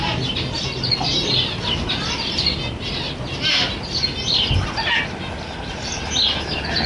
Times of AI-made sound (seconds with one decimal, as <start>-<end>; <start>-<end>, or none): none